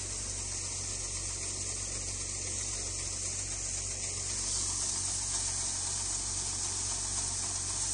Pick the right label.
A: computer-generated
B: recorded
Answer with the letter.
B